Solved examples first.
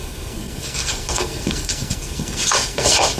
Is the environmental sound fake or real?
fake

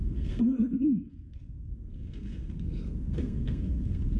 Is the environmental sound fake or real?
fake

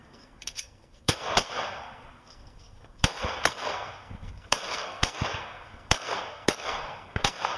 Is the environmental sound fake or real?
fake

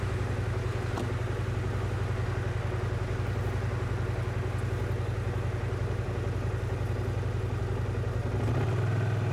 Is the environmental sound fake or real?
real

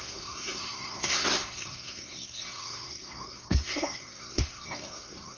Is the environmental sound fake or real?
fake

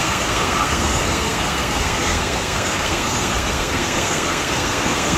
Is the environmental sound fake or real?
fake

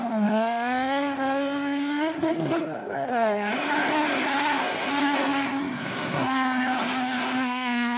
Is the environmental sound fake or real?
fake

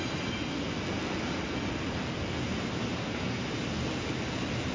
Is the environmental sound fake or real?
real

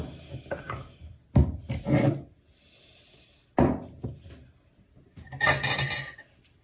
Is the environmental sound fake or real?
real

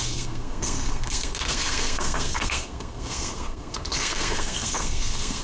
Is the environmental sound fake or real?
fake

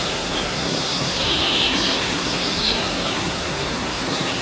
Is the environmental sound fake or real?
fake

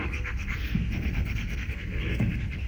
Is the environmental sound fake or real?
fake